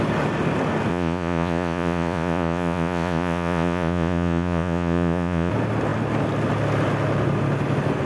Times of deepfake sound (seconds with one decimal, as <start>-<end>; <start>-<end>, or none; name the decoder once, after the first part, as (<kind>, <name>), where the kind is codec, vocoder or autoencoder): 0.9-5.5 (vocoder, Vocos)